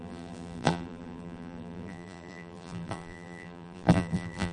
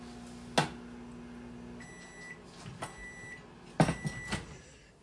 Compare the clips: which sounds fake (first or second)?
first